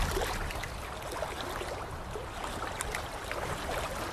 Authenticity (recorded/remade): recorded